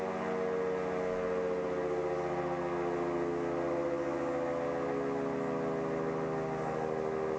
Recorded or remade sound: recorded